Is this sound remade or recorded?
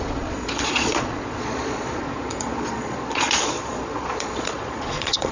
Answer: remade